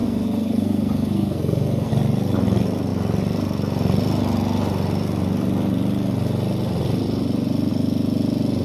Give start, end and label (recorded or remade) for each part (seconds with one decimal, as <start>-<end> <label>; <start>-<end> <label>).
0.0-1.9 remade; 1.9-8.6 recorded